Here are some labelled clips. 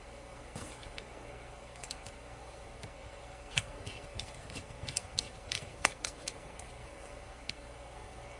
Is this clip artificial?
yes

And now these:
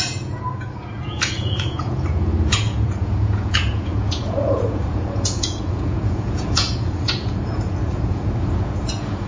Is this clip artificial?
yes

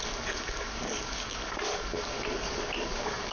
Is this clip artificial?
yes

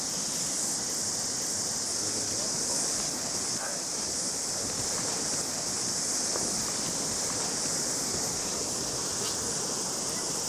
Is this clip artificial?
no